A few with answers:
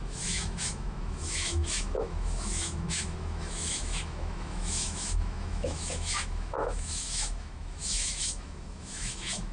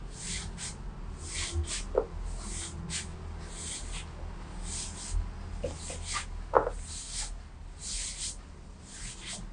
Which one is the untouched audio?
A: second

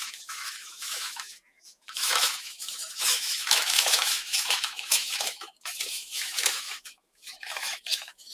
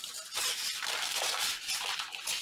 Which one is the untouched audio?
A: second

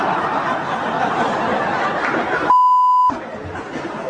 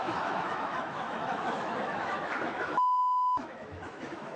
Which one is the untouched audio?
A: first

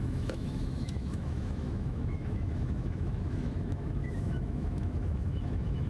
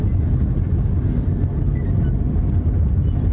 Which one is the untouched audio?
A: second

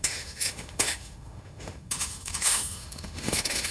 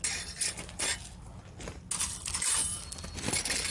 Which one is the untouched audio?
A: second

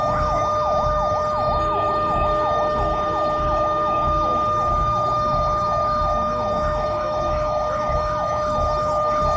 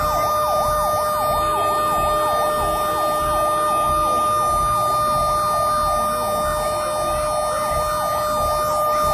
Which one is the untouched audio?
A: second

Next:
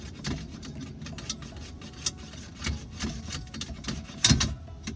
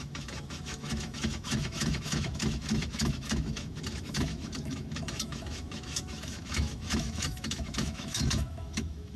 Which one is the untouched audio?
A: first